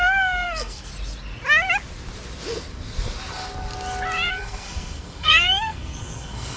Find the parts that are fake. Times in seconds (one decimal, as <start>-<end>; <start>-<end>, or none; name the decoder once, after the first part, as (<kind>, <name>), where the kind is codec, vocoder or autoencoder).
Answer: 0.0-0.9 (codec, SNAC); 4.3-6.6